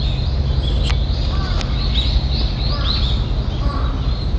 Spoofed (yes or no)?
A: no